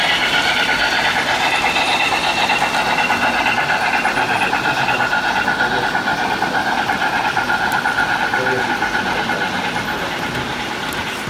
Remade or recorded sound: recorded